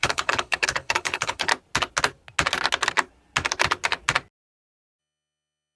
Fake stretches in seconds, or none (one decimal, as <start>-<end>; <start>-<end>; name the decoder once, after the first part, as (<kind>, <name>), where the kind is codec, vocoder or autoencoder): 0.0-1.5 (codec, HILCodec); 5.0-5.8